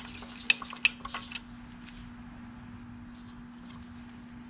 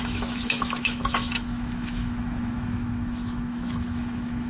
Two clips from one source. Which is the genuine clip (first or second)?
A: first